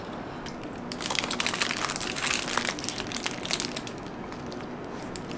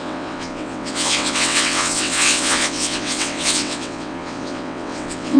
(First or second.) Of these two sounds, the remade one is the second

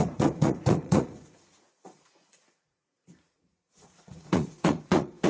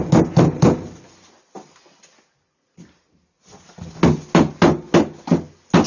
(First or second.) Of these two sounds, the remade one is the first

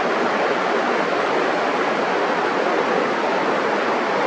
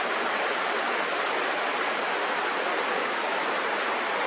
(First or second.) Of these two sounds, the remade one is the second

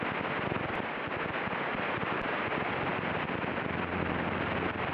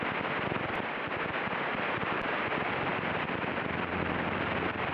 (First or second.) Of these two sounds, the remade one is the second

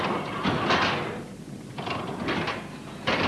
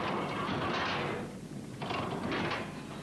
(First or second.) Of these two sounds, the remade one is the first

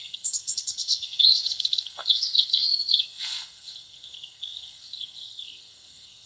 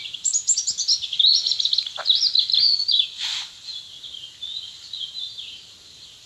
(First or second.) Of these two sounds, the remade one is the first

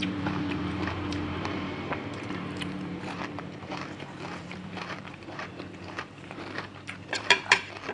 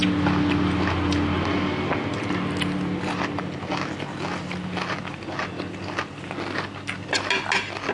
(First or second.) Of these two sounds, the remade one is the first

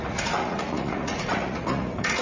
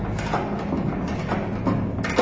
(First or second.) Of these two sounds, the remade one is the first